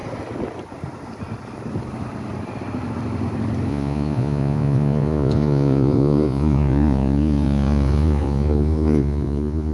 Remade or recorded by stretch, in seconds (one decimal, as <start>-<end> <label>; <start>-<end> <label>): 0.0-3.7 recorded; 3.7-9.7 remade